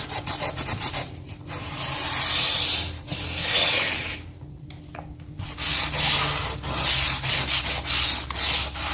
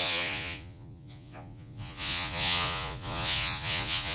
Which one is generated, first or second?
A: second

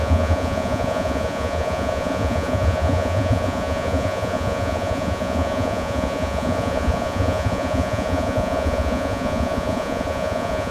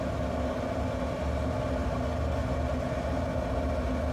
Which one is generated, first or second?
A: first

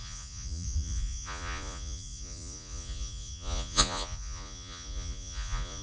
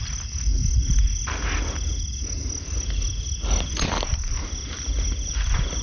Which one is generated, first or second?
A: first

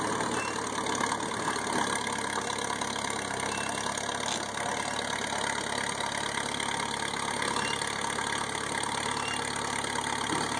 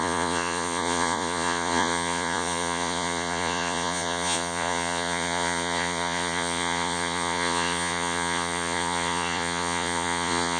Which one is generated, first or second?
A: second